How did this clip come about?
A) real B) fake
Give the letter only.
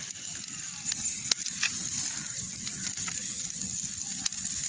A